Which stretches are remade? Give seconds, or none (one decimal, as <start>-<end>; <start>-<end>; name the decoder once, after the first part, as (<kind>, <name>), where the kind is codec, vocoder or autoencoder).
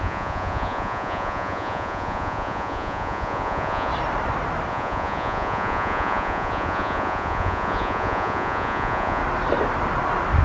0.0-3.9 (vocoder, Vocos); 4.7-9.2